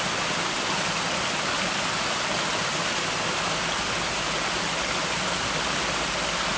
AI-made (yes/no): no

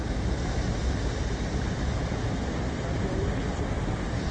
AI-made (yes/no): no